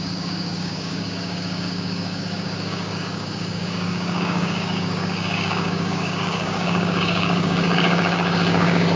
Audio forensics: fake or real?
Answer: fake